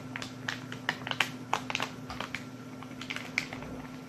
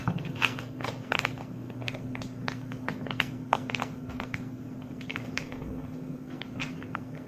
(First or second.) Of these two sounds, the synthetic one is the second